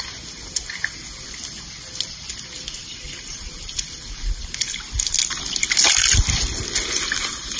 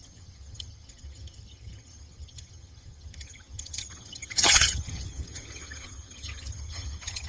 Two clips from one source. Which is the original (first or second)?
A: first